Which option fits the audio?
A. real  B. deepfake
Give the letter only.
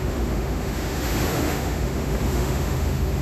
B